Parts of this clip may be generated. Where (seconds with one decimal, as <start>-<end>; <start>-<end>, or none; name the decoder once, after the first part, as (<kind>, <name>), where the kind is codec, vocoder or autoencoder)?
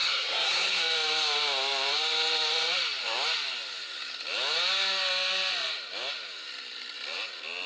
0.0-0.8 (codec, SNAC)